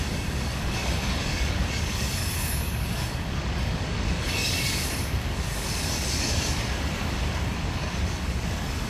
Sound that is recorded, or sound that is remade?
remade